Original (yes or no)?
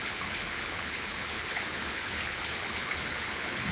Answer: no